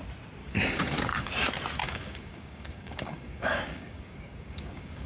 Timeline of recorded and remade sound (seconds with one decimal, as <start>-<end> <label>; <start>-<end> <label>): 0.0-0.4 recorded; 0.4-1.3 remade; 1.3-1.8 recorded; 1.8-5.1 remade